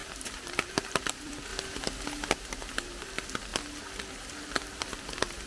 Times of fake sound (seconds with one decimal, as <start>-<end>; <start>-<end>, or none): 0.0-1.5; 2.3-3.5; 4.2-5.5